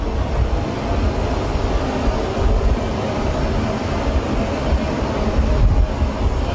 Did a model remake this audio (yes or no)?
no